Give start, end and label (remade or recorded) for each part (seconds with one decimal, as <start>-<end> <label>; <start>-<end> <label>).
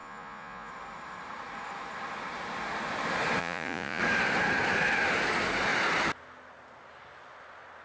0.0-0.7 remade; 0.7-3.4 recorded; 3.4-4.0 remade; 4.0-7.8 recorded